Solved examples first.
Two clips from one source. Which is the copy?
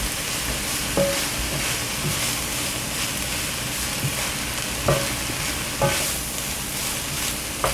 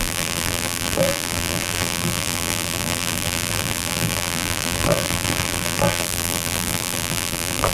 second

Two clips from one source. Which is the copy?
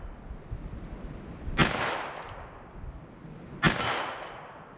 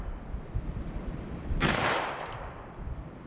second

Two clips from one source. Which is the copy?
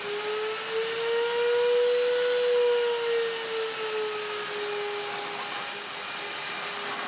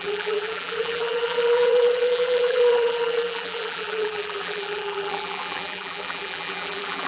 second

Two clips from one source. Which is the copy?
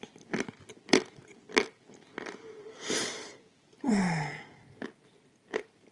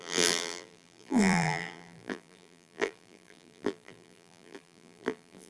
second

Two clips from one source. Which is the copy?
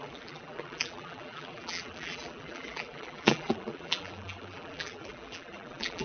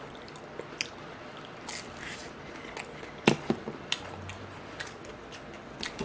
first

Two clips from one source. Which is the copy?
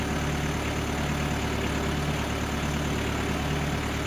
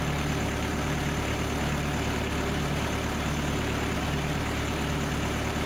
second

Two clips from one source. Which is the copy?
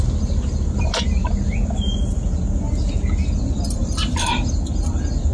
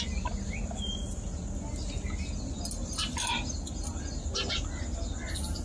first